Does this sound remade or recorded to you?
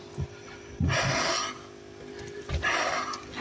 recorded